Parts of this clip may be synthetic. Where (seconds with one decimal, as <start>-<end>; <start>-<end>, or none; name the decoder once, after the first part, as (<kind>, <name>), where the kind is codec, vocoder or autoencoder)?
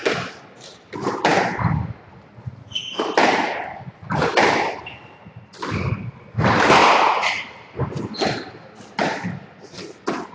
none